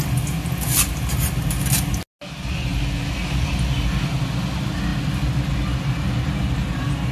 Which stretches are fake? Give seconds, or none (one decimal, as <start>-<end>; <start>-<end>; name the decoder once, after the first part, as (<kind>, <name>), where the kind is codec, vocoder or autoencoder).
none